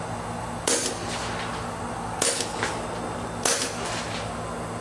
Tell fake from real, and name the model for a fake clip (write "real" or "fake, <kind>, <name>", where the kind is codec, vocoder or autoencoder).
real